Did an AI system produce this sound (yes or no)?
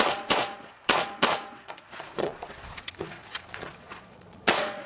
yes